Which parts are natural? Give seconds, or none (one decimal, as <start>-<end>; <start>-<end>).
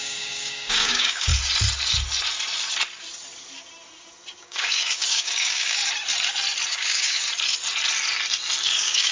1.3-4.4; 5.8-6.7; 7.2-8.6